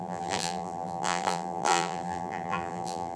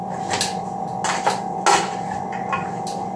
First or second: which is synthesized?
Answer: first